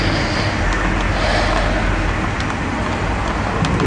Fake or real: real